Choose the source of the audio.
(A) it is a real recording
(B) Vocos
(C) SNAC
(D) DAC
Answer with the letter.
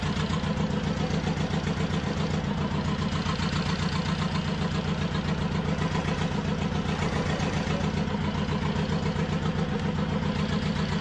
A